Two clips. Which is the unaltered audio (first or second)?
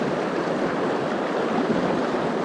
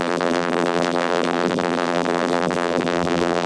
first